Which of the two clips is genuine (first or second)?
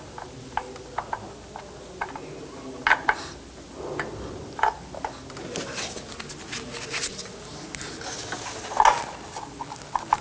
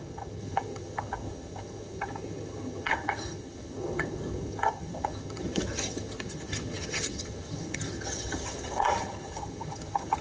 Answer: first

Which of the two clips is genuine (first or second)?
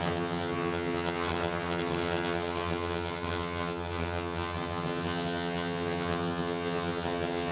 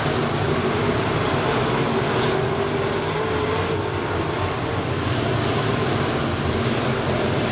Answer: second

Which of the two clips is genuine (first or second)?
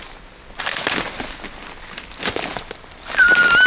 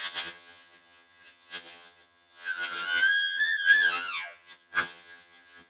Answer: first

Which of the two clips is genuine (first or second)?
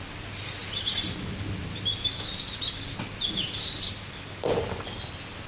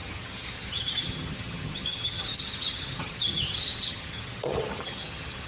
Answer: first